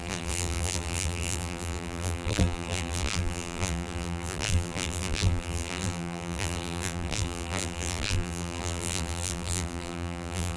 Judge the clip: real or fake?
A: fake